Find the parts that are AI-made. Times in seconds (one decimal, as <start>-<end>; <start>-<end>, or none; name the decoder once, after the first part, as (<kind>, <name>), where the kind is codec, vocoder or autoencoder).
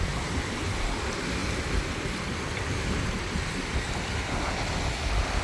none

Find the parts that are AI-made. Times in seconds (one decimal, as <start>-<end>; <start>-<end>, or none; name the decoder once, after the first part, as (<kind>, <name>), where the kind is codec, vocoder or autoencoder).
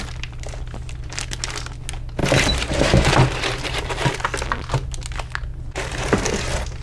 2.2-4.1 (vocoder, BigVGAN v2); 5.5-6.3